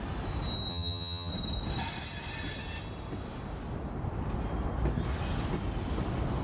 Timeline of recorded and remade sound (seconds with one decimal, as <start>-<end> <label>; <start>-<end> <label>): 0.0-0.7 recorded; 0.7-1.3 remade; 1.3-6.4 recorded